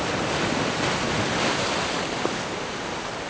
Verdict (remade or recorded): recorded